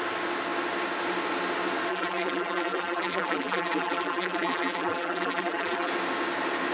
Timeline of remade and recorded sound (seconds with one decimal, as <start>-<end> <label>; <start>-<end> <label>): 0.0-1.9 recorded; 1.9-5.9 remade; 5.9-6.7 recorded